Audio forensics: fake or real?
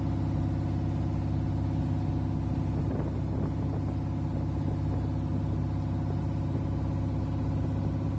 real